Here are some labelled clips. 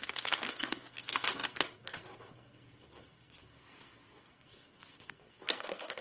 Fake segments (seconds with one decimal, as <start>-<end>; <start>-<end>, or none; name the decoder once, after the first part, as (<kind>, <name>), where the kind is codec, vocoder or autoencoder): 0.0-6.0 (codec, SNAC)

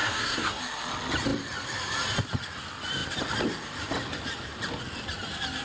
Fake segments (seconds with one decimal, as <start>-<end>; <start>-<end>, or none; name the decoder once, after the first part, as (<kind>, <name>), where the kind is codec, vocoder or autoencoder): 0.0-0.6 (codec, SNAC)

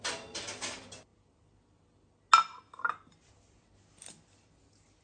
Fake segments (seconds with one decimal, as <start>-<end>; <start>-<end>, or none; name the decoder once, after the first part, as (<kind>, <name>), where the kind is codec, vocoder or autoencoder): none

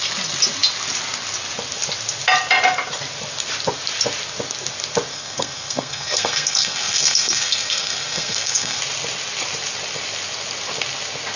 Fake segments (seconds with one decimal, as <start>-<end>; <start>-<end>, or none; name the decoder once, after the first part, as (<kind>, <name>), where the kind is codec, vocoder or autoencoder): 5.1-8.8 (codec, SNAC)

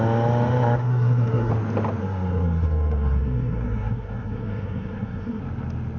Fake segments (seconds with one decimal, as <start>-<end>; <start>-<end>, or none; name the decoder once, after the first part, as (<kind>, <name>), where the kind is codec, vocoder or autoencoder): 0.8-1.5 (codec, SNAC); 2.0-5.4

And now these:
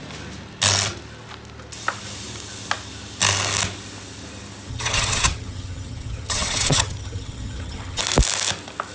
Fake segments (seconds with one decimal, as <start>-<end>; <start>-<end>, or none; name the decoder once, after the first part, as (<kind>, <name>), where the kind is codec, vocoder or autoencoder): 4.7-8.0 (vocoder, HiFi-GAN)

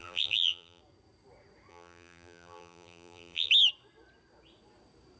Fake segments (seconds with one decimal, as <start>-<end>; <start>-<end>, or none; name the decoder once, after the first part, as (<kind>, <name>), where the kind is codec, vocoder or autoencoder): 0.0-0.8 (vocoder, BigVGAN v2); 1.7-3.5